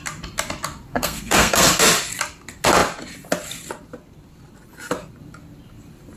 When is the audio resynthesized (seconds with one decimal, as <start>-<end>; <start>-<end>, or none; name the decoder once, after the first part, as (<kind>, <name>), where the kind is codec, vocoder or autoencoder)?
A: 0.9-1.8 (codec, SNAC)